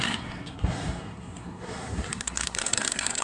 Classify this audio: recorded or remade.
remade